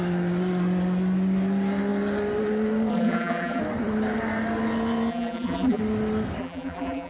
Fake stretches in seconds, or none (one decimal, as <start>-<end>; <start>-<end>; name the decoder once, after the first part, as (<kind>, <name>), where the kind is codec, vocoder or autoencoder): 2.9-3.6 (vocoder, BigVGAN v2); 5.1-5.8; 6.4-7.1